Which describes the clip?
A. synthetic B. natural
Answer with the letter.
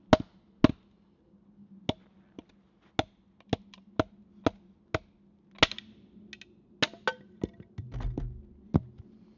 B